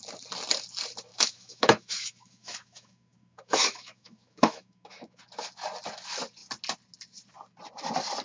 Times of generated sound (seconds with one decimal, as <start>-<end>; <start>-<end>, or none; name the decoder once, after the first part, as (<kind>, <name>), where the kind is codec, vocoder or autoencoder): 1.1-5.2 (autoencoder, DAC-VAE)